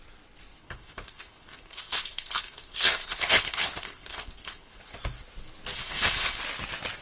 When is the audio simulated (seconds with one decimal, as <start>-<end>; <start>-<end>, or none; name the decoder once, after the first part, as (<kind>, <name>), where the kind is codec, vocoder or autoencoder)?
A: 0.6-4.8 (codec, HILCodec); 5.8-6.4